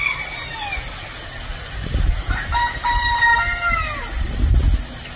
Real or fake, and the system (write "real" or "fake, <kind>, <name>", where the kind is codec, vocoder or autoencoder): real